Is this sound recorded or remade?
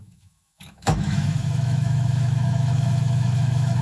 remade